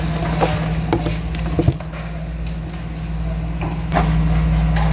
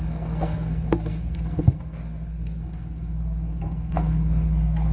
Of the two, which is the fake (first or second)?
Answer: second